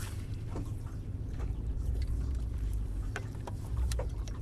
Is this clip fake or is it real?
fake